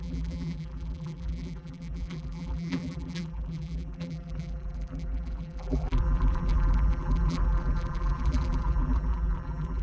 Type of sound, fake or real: fake